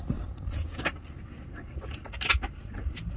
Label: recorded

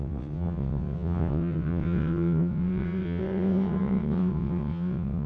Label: remade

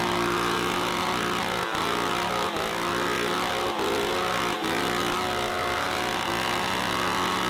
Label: recorded